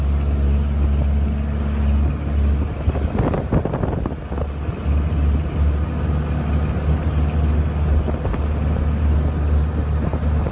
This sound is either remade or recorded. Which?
recorded